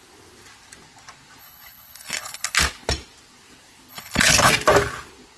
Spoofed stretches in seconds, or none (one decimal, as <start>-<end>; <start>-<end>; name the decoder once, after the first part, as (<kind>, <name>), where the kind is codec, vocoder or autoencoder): 1.4-2.6 (codec, HILCodec); 3.9-4.5